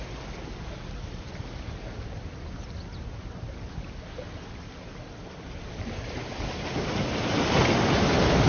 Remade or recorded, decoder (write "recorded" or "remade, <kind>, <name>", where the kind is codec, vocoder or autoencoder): recorded